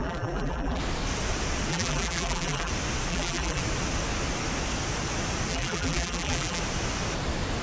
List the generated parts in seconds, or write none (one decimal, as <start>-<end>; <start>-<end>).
0.0-0.8; 1.7-2.7; 3.1-3.6; 5.5-6.6